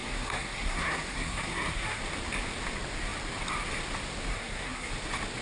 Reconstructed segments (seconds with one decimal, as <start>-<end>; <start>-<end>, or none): 0.0-2.0; 4.3-4.9